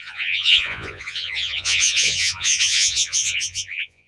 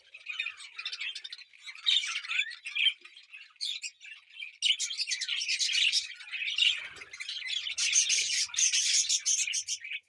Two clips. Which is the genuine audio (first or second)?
second